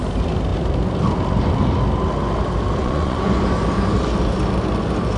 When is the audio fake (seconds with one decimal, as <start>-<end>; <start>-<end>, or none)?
2.8-3.6